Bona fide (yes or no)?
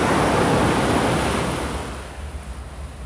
yes